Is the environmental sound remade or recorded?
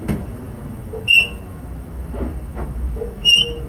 remade